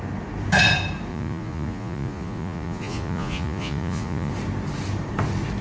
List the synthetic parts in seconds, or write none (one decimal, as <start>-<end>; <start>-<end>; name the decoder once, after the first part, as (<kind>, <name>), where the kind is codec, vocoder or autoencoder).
1.1-4.3 (vocoder, Vocos)